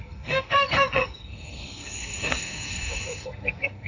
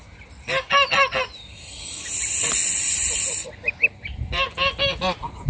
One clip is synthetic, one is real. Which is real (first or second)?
second